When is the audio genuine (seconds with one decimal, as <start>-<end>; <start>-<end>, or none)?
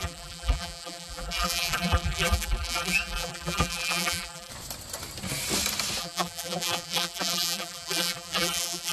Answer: 4.5-6.0